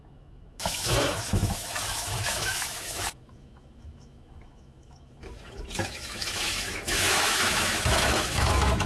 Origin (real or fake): fake